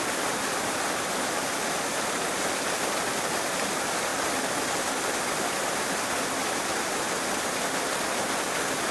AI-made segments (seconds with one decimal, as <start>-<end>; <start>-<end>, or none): none